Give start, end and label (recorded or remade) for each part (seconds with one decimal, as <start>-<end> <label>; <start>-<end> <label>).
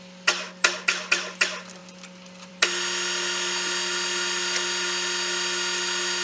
0.0-6.2 recorded